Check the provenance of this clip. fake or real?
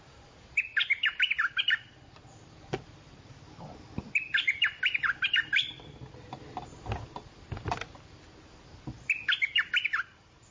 fake